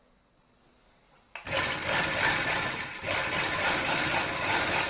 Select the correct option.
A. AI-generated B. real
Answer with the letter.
B